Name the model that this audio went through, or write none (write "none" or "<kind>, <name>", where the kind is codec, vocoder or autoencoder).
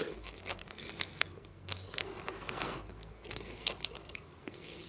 codec, SNAC